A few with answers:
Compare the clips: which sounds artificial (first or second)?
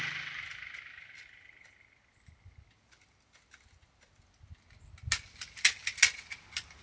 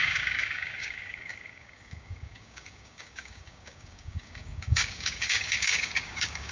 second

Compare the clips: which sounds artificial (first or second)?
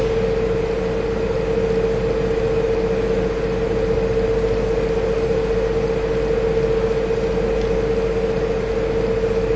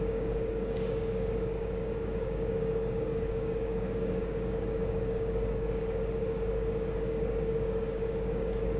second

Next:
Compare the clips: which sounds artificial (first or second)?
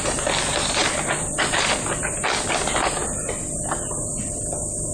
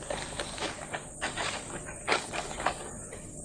second